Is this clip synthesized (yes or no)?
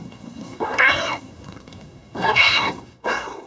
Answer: yes